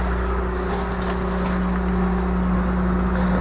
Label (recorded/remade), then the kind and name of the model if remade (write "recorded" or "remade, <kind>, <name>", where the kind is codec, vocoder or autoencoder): recorded